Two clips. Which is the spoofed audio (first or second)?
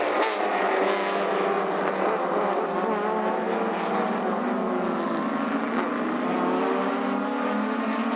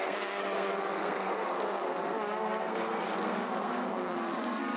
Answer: second